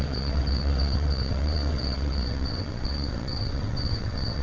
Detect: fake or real fake